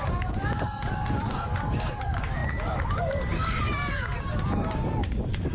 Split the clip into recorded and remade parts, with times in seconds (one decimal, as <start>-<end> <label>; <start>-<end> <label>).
0.0-5.5 remade